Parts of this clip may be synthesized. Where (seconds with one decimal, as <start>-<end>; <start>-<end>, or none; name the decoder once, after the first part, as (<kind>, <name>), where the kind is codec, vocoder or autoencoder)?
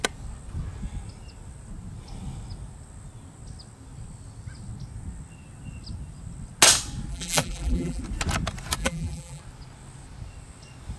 7.1-8.0 (vocoder, BigVGAN v2); 8.8-9.4